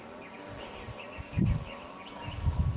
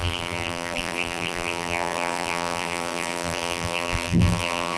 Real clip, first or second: first